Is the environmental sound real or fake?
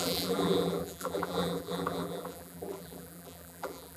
fake